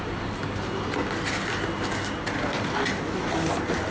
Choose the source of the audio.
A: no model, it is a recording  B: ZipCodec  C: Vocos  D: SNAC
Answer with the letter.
A